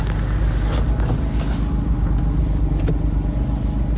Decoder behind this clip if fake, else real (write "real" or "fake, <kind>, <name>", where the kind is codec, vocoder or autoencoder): real